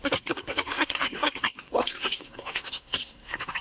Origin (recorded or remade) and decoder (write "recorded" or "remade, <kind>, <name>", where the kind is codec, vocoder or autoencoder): remade, codec, SNAC